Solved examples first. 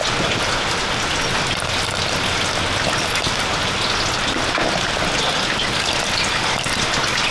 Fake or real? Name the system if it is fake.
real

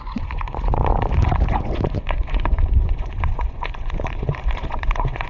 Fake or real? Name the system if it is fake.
fake, vocoder, Vocos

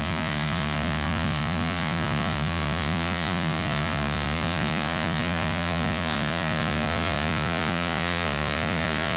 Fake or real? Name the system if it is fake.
fake, vocoder, Vocos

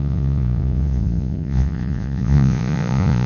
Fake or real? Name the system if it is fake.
fake, vocoder, Vocos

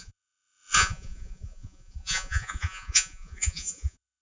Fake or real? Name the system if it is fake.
fake, vocoder, Vocos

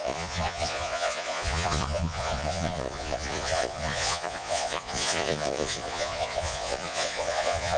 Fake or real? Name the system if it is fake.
fake, vocoder, Vocos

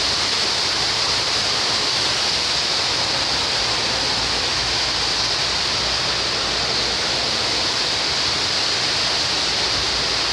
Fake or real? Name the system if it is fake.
real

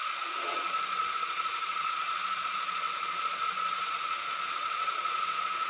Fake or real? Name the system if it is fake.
fake, vocoder, Vocos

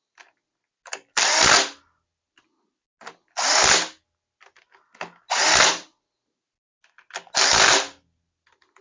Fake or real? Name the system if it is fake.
real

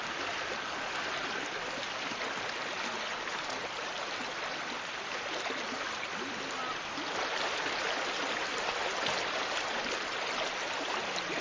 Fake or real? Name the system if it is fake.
real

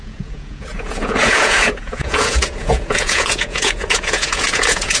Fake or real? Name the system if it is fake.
fake, vocoder, Vocos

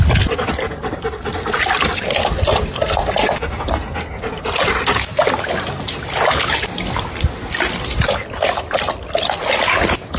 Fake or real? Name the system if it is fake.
real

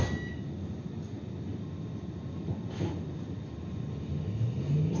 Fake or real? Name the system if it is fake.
real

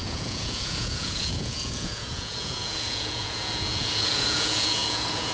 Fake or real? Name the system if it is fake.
fake, vocoder, Vocos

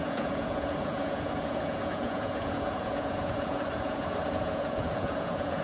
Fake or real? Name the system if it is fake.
fake, vocoder, Vocos